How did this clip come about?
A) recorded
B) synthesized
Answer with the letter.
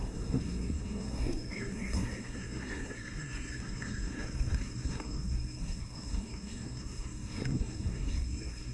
B